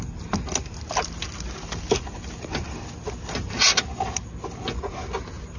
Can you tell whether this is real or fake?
real